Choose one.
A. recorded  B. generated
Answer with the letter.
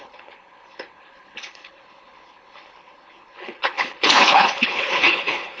B